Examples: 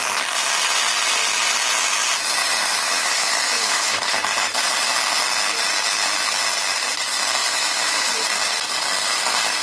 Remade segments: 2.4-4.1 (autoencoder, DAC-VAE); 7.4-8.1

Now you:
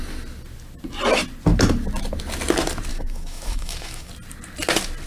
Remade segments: 2.9-4.1 (autoencoder, DAC-VAE)